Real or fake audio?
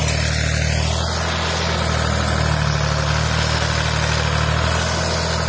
real